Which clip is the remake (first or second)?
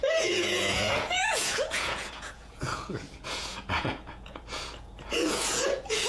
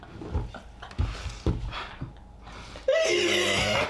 first